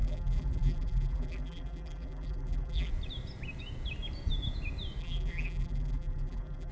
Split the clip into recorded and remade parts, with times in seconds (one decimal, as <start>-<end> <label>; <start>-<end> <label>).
0.0-2.9 remade; 2.9-5.0 recorded; 5.0-6.7 remade